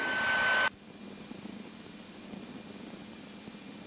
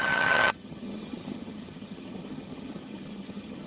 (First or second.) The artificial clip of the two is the second